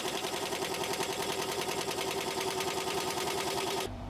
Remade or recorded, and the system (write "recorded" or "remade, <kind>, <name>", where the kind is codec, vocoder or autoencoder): remade, vocoder, BigVGAN v2